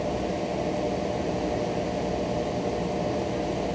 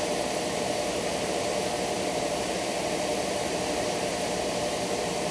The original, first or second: first